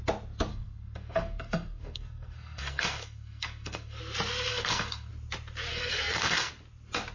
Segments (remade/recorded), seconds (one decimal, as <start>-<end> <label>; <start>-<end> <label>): 0.0-0.5 recorded; 0.5-4.0 remade; 4.0-4.5 recorded; 4.5-5.1 remade; 5.1-5.7 recorded; 5.7-6.5 remade; 6.5-7.1 recorded